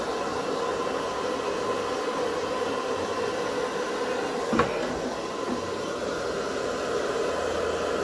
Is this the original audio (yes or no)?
yes